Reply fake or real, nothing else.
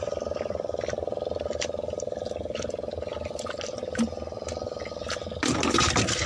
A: real